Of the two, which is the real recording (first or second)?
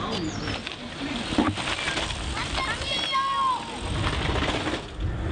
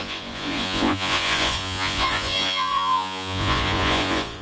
first